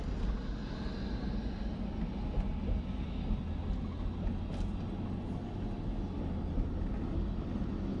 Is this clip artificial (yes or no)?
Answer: no